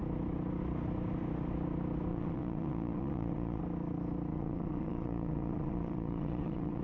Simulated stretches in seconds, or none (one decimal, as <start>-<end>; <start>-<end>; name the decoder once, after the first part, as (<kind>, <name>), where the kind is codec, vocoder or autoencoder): 2.1-3.6 (vocoder, Vocos); 4.3-6.8